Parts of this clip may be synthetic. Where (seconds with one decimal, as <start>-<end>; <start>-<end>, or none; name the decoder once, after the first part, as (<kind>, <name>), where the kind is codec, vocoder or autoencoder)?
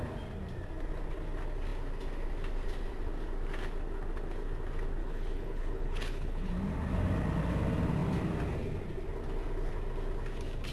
5.0-6.5 (codec, HILCodec)